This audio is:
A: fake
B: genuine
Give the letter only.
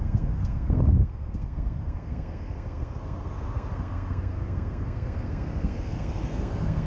A